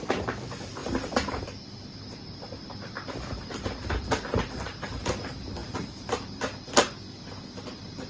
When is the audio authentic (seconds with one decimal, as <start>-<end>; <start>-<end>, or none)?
0.0-8.1